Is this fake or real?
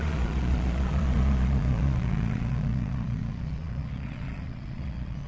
fake